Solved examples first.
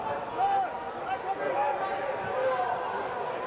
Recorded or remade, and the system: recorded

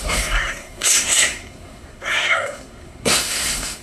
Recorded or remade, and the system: remade, codec, SNAC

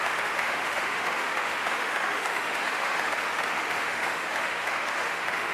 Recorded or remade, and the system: remade, autoencoder, DAC-VAE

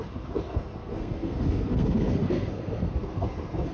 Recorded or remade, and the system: remade, codec, SNAC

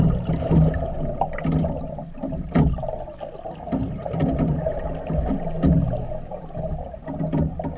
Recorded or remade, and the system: recorded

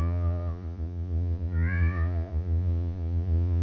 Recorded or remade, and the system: remade, vocoder, Vocos